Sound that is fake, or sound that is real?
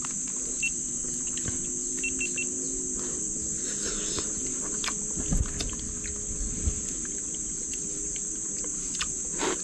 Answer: real